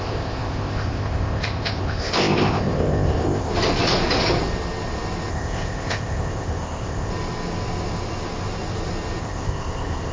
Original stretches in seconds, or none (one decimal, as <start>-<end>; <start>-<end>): 3.5-5.3; 7.1-9.2